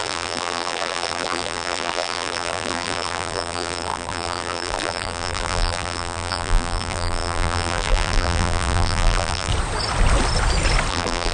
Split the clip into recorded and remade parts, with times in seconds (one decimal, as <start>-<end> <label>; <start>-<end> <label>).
0.0-9.5 remade; 9.5-10.9 recorded; 10.9-11.3 remade